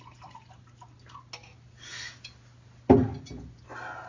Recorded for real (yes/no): yes